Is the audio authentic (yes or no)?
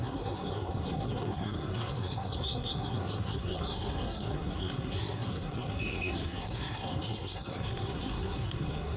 no